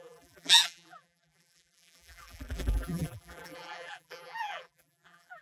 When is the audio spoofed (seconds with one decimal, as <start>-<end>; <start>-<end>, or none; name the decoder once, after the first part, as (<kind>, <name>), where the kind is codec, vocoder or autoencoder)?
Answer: 0.0-5.4 (vocoder, BigVGAN v2)